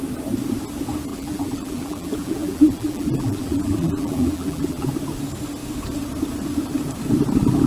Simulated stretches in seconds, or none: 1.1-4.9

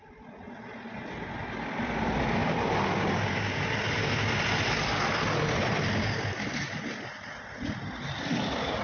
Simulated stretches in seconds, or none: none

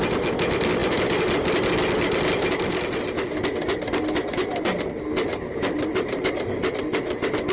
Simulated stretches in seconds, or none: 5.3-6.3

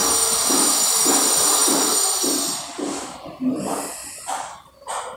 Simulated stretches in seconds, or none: 1.0-4.0

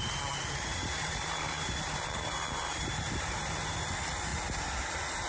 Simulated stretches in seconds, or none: 0.7-3.9

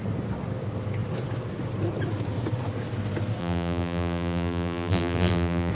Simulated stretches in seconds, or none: 3.4-5.7

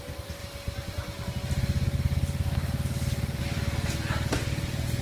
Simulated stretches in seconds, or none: none

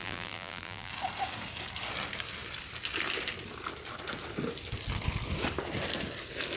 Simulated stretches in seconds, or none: 0.0-0.9